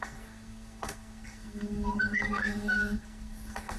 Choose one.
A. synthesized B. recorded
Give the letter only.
A